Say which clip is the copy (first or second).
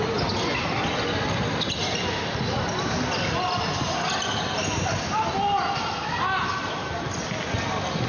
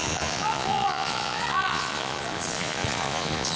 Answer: second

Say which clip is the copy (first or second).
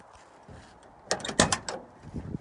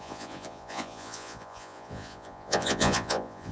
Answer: second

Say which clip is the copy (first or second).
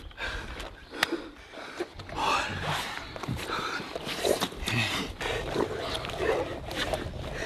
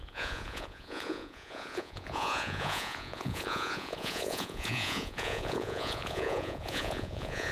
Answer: second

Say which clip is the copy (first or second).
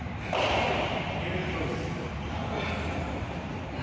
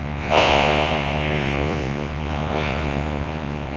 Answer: second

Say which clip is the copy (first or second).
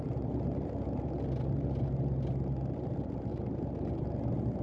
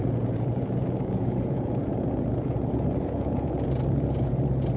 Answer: second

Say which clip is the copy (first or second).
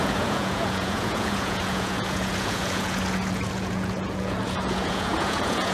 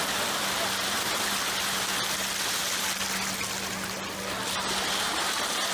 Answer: first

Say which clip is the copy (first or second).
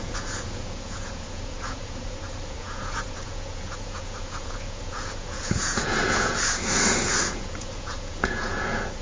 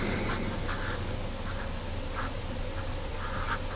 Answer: first